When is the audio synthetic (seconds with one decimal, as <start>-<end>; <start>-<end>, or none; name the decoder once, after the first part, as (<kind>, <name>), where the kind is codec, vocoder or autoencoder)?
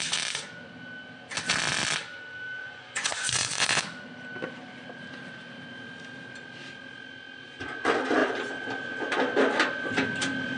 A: 2.6-3.8 (vocoder, Vocos)